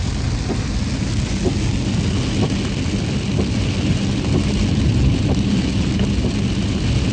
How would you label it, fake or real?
real